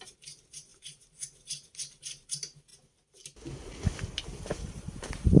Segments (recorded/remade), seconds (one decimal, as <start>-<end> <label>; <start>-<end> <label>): 0.0-2.7 remade; 2.7-4.5 recorded; 4.5-5.4 remade